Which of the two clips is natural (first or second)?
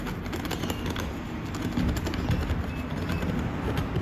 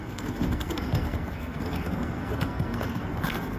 first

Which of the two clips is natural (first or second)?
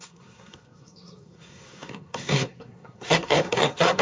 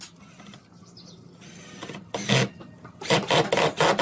second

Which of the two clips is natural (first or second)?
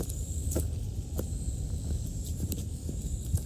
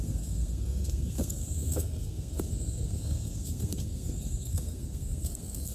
first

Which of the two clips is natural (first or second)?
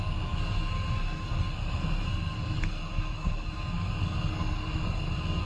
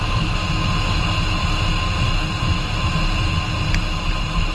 second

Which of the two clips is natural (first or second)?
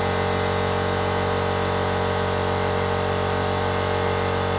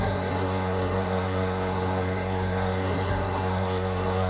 first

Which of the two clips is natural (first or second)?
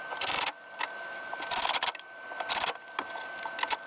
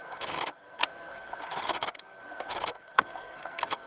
first